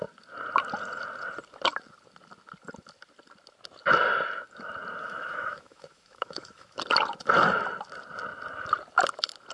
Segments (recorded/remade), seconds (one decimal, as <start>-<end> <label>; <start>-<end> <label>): 0.0-5.0 recorded; 5.0-6.8 remade; 6.8-9.5 recorded